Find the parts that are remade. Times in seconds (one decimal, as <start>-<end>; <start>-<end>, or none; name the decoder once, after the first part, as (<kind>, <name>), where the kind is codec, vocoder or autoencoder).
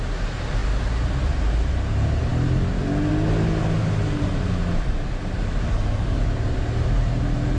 none